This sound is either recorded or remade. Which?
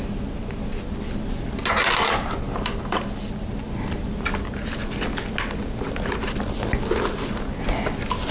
recorded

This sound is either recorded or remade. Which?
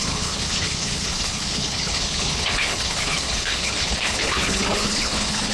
remade